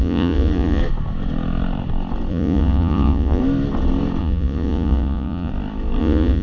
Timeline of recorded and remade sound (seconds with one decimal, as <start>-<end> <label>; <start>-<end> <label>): 0.0-0.8 remade; 0.8-2.3 recorded; 2.3-3.4 remade; 3.4-4.2 recorded; 4.2-5.5 remade; 5.5-6.0 recorded; 6.0-6.4 remade